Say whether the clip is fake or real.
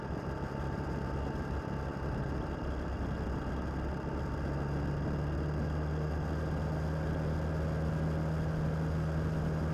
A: real